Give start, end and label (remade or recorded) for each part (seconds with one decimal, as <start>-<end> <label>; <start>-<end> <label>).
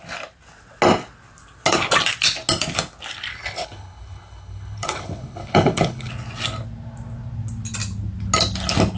0.0-3.3 recorded; 3.3-6.1 remade; 6.1-9.0 recorded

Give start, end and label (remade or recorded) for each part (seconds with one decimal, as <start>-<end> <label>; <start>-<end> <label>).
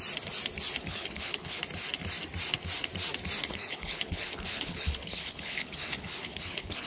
0.0-0.9 recorded; 0.9-1.6 remade; 1.6-3.5 recorded; 3.5-6.9 remade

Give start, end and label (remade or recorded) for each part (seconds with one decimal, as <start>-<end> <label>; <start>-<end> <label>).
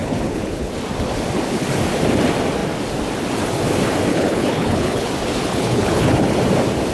0.0-0.7 remade; 0.7-4.1 recorded; 4.1-5.1 remade; 5.1-5.5 recorded; 5.5-6.4 remade; 6.4-6.9 recorded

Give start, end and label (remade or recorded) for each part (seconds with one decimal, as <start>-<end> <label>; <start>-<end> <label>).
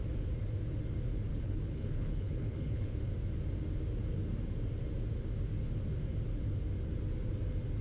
0.0-1.3 recorded; 1.3-3.0 remade; 3.0-7.8 recorded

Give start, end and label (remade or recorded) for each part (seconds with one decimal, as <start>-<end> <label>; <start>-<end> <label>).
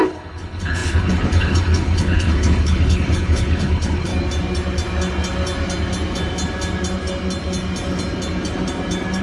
0.0-4.1 remade; 4.1-9.2 recorded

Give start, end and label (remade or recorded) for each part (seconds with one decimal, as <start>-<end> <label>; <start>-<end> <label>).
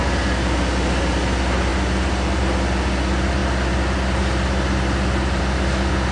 0.0-6.1 recorded